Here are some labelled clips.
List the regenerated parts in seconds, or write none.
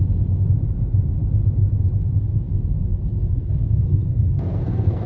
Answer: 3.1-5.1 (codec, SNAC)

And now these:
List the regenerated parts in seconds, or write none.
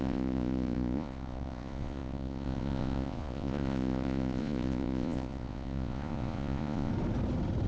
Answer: 0.0-6.9 (vocoder, Vocos)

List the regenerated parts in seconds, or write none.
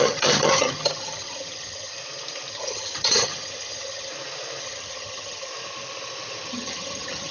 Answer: 0.0-1.9 (vocoder, HiFi-GAN); 2.5-4.1; 4.6-5.5; 6.5-7.3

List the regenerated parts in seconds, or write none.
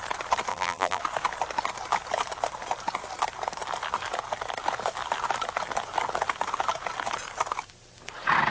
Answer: 0.5-1.0 (vocoder, BigVGAN v2)